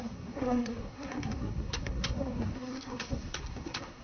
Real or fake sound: fake